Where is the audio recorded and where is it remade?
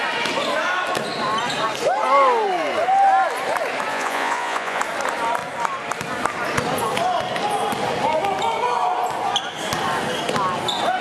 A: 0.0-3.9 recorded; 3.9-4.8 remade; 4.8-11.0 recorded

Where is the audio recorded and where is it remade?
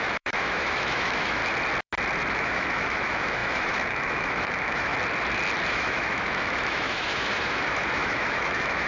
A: 0.0-1.4 remade; 1.4-2.3 recorded; 2.3-4.9 remade; 4.9-5.7 recorded; 5.7-8.9 remade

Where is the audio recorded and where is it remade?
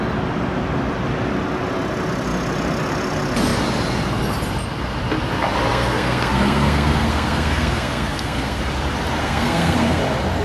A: 0.0-5.7 recorded; 5.7-8.6 remade; 8.6-9.2 recorded; 9.2-10.0 remade; 10.0-10.4 recorded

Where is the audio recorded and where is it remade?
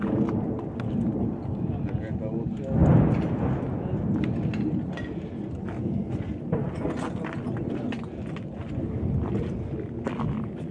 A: 0.0-10.7 recorded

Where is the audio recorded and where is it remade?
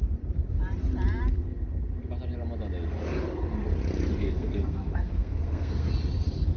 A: 0.0-4.2 recorded; 4.2-5.9 remade; 5.9-6.6 recorded